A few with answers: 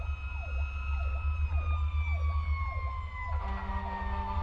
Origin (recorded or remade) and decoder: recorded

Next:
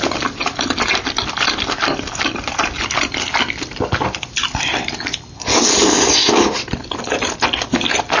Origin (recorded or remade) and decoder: recorded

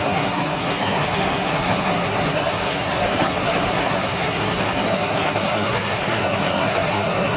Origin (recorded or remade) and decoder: remade, codec, SNAC